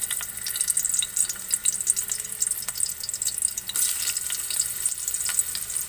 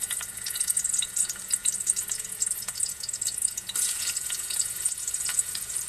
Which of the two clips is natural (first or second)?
first